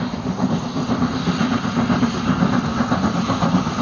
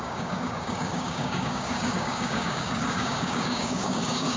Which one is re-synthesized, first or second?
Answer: second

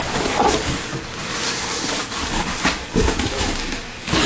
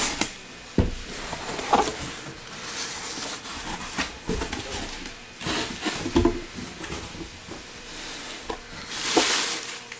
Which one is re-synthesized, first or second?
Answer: first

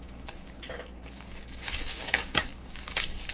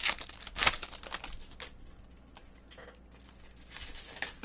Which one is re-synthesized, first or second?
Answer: first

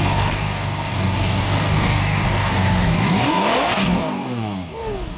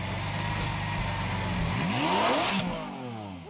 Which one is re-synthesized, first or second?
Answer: first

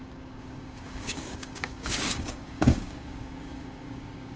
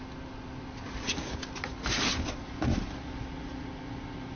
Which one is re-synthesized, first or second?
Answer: first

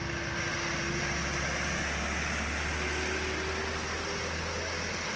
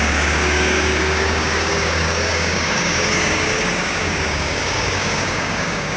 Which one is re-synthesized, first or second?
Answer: second